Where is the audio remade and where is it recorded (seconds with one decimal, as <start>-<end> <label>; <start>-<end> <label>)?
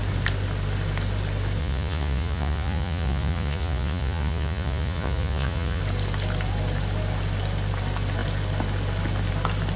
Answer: 0.0-1.6 recorded; 1.6-5.8 remade; 5.8-9.8 recorded